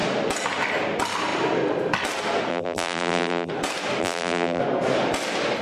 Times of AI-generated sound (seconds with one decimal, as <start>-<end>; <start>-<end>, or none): 2.5-3.5; 4.0-4.6